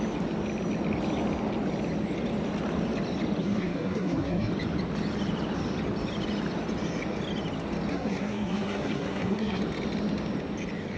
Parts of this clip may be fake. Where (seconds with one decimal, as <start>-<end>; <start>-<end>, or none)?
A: 3.4-4.5; 7.9-9.6